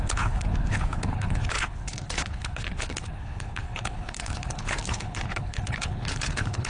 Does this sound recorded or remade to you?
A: remade